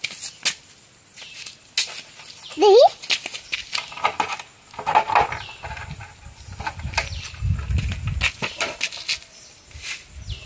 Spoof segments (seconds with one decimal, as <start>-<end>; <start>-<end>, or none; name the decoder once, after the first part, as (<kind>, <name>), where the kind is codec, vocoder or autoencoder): none

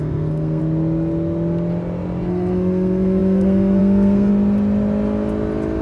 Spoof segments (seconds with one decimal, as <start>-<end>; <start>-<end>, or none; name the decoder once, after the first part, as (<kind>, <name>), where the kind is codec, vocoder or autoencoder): 0.0-0.6 (codec, SNAC); 2.3-4.3

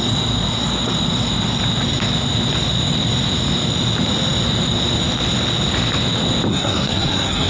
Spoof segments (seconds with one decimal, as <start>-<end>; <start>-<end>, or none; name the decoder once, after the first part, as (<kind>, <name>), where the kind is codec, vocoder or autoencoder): 6.5-7.5 (codec, SNAC)

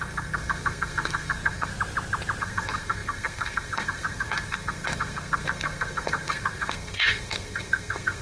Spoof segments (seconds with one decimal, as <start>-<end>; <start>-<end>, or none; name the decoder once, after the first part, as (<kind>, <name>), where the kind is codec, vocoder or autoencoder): 0.0-1.7 (codec, SNAC); 2.4-8.2

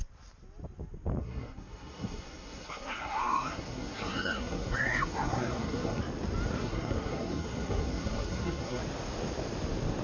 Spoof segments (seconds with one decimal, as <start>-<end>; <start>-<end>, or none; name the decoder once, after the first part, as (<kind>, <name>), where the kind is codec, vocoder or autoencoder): 1.2-6.0 (codec, SNAC); 6.6-8.8

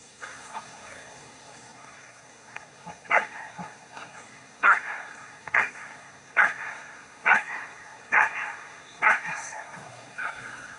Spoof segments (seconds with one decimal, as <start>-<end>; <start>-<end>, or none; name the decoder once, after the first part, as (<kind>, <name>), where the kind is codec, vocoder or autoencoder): 0.0-10.8 (codec, SNAC)

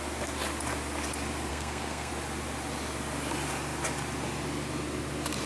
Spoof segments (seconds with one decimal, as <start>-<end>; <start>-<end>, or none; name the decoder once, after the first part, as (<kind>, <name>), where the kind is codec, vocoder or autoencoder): 1.5-2.1 (codec, SNAC)

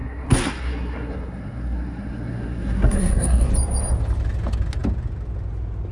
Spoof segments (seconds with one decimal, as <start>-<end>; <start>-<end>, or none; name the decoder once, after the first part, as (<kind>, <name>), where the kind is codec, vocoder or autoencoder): 0.0-3.5 (codec, SNAC)